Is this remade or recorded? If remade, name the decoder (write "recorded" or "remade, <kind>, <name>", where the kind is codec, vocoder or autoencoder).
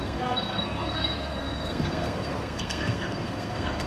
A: remade, codec, SNAC